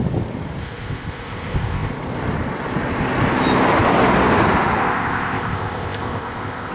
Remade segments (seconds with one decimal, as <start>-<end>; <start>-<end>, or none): 0.6-1.9; 4.8-6.7

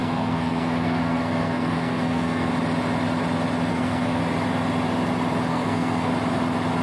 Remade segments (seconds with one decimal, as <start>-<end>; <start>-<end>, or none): 0.0-2.5; 3.7-4.2; 5.5-6.1

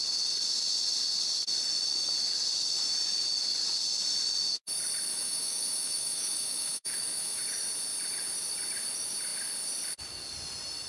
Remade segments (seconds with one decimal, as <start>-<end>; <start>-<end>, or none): 5.1-7.4

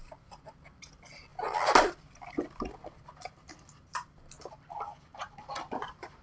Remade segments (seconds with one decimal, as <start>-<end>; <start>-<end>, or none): 5.1-6.2